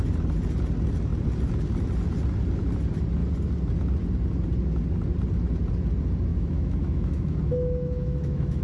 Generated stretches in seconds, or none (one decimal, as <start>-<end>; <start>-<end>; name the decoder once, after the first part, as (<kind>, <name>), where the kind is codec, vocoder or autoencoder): 6.3-8.6 (autoencoder, DAC-VAE)